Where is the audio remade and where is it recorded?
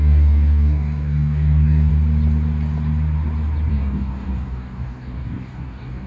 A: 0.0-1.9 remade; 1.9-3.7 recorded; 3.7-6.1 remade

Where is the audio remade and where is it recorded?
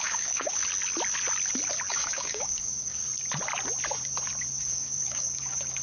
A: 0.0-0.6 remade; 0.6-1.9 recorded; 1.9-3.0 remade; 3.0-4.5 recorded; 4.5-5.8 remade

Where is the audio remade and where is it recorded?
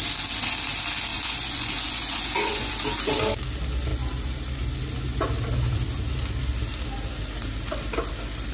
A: 0.0-1.1 recorded; 1.1-2.7 remade; 2.7-8.5 recorded